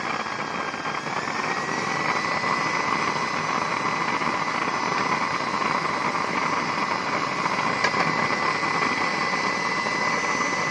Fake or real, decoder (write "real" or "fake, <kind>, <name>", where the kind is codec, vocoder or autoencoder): real